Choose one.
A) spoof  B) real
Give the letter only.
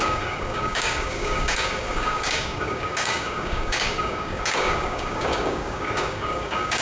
A